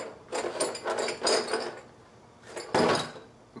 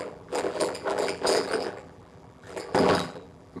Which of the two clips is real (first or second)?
first